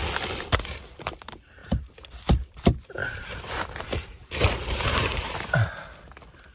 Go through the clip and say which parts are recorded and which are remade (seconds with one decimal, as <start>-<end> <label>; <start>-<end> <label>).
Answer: 0.0-1.6 recorded; 1.6-2.1 remade; 2.1-3.0 recorded; 3.0-5.3 remade; 5.3-6.5 recorded